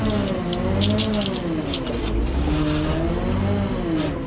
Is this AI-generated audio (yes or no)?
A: no